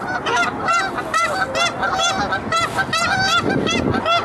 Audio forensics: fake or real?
real